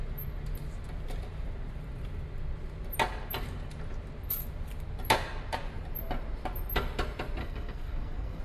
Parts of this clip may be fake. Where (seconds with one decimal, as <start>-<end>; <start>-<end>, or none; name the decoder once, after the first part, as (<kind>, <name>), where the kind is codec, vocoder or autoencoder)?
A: 7.4-8.4 (codec, SNAC)